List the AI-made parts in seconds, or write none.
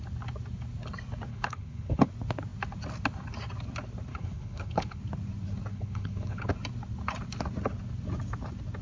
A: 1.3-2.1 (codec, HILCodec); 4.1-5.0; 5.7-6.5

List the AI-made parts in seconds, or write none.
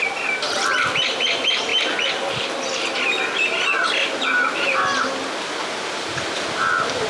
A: none